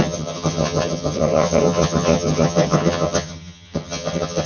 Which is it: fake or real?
fake